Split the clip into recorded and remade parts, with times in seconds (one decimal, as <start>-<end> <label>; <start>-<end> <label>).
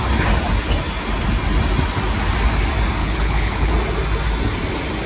0.0-3.0 recorded; 3.0-3.7 remade; 3.7-5.1 recorded